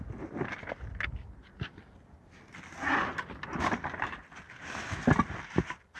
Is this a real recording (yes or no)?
yes